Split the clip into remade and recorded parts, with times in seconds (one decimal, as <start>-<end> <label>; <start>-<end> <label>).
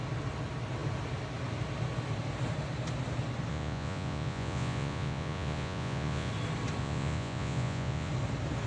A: 0.0-3.5 recorded; 3.5-6.3 remade; 6.3-6.8 recorded; 6.8-8.1 remade; 8.1-8.7 recorded